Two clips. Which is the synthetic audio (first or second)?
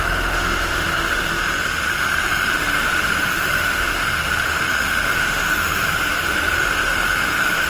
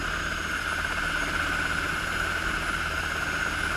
first